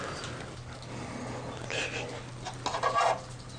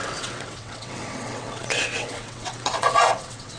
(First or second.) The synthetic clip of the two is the second